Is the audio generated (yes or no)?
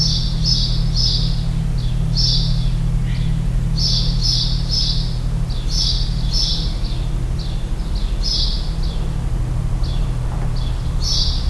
no